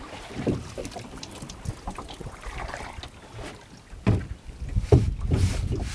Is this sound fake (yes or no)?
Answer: no